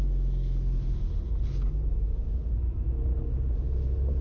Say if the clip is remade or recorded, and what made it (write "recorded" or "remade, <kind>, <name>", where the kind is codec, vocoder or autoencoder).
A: recorded